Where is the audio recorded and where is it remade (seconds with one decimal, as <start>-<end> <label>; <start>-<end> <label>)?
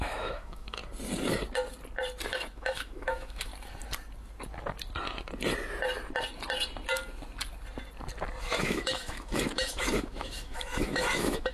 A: 0.0-0.8 remade; 0.8-2.5 recorded; 2.5-3.5 remade; 3.5-8.4 recorded; 8.4-11.5 remade